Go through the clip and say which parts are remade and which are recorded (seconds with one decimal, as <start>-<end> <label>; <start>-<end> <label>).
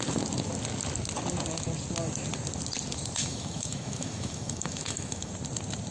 0.0-3.2 recorded; 3.2-5.3 remade; 5.3-5.9 recorded